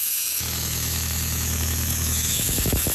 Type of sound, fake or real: fake